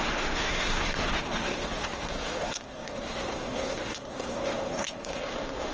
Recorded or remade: remade